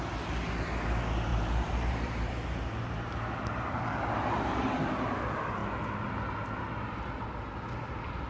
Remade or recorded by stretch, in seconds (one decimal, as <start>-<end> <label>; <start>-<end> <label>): 0.0-1.3 recorded; 1.3-4.6 remade; 4.6-8.3 recorded